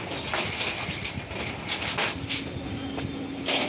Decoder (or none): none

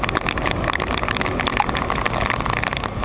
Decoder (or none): none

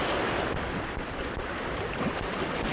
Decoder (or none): none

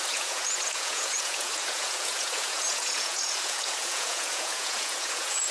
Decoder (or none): vocoder, Vocos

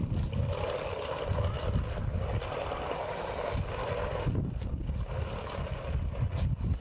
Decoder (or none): none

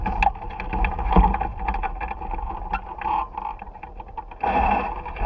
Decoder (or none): none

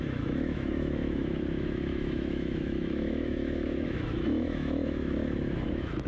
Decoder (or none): autoencoder, DAC-VAE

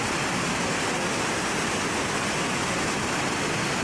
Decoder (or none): none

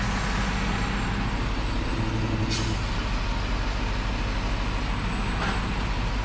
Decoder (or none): none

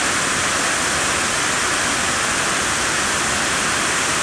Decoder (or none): none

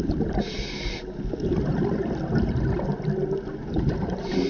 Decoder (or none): none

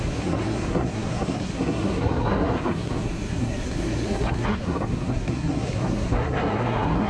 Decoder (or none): codec, SNAC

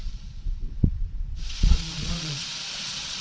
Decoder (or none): vocoder, Vocos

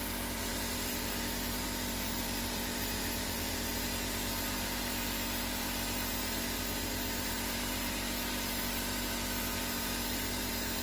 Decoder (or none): vocoder, BigVGAN v2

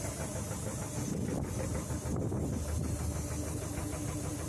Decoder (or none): none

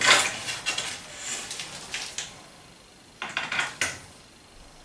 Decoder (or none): none